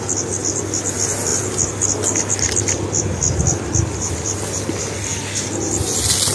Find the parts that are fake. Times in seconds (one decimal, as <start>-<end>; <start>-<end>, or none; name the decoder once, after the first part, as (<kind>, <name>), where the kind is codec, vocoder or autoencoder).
none